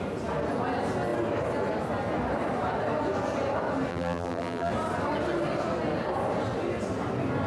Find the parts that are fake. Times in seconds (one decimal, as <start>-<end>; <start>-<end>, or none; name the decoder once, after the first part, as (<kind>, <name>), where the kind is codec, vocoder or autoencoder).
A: 3.9-4.7 (vocoder, BigVGAN v2)